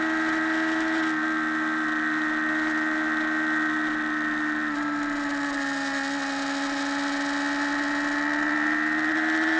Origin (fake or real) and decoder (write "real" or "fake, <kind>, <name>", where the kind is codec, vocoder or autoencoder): real